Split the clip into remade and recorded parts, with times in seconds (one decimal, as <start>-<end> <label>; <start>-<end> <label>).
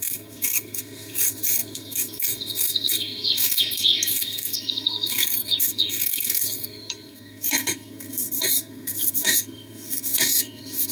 0.0-10.9 remade